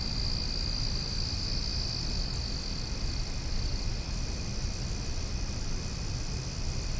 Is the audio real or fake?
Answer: real